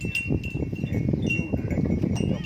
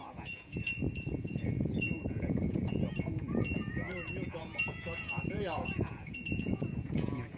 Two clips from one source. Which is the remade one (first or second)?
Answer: second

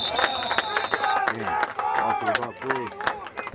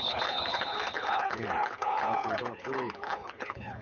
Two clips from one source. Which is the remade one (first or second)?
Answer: second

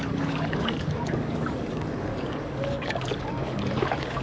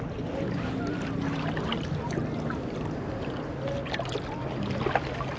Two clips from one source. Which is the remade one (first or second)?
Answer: first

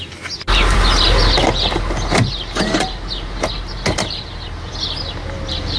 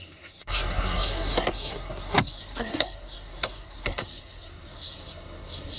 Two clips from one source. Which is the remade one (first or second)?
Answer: second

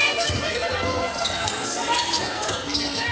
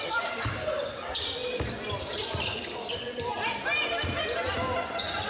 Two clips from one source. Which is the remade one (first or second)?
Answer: first